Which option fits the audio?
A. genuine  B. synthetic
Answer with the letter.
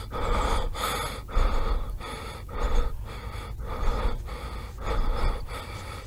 A